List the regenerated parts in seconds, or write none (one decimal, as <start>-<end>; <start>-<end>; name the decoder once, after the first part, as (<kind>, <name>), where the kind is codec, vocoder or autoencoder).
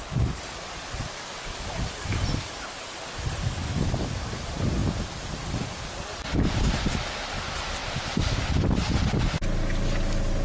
none